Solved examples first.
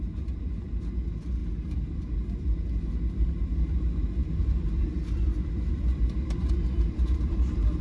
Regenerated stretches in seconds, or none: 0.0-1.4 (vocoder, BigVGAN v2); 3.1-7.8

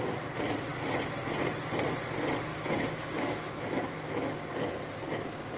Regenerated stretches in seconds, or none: 2.5-4.5 (autoencoder, DAC-VAE)

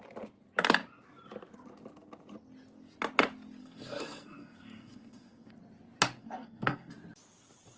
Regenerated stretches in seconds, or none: 3.6-5.5 (codec, SNAC); 6.2-6.9

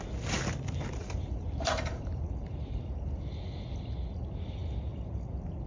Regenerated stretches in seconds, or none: 1.0-2.8 (vocoder, BigVGAN v2)

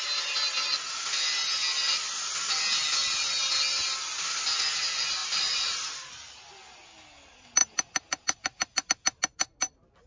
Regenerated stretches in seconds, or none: 5.2-6.1 (vocoder, BigVGAN v2); 7.6-8.9

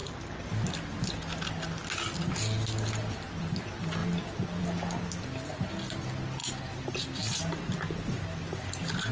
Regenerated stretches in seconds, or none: none

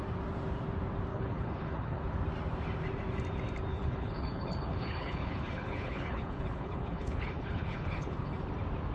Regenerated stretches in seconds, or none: 1.1-2.0 (codec, HILCodec); 3.7-8.4